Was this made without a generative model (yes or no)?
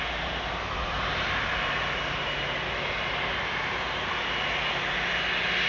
yes